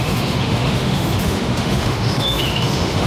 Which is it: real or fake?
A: fake